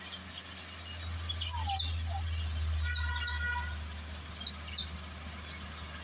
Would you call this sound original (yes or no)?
yes